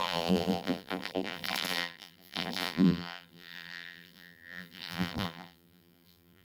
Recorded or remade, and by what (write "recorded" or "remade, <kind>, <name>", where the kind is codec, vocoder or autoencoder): remade, vocoder, BigVGAN v2